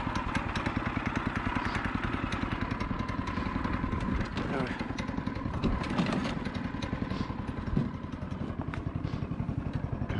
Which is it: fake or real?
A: real